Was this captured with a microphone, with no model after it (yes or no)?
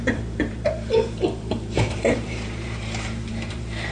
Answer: no